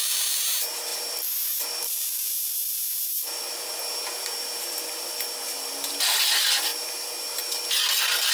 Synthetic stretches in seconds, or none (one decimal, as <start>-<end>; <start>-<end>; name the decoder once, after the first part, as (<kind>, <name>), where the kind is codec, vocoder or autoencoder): none